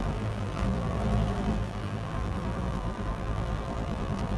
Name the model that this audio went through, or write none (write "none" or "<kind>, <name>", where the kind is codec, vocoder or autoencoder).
vocoder, BigVGAN v2